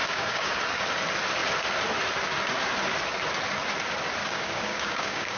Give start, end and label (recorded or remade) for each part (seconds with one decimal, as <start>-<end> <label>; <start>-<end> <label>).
0.0-0.6 remade; 0.6-4.2 recorded; 4.2-5.4 remade